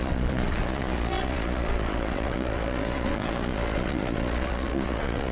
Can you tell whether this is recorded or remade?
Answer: remade